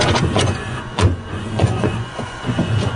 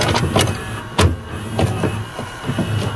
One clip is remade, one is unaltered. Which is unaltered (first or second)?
second